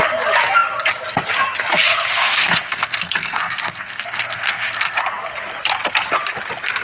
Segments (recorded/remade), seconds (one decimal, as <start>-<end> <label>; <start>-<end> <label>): 0.0-1.9 recorded; 1.9-5.0 remade; 5.0-6.8 recorded